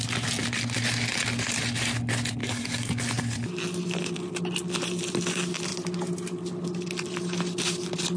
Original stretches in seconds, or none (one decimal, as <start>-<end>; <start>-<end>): 0.0-2.4; 3.0-8.2